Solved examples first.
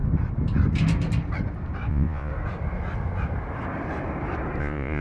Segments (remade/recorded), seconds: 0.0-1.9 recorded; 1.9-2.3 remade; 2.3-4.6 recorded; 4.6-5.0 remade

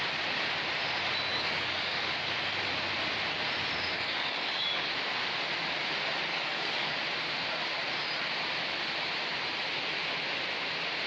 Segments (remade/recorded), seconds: 0.0-1.3 recorded; 1.3-2.1 remade; 2.1-3.9 recorded; 3.9-4.9 remade; 4.9-6.3 recorded; 6.3-7.0 remade; 7.0-11.1 recorded

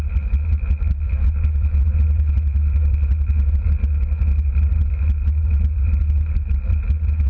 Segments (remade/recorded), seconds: 0.0-7.3 recorded

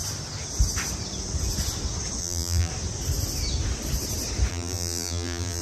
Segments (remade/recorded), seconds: 0.0-2.2 recorded; 2.2-2.7 remade; 2.7-4.5 recorded; 4.5-5.6 remade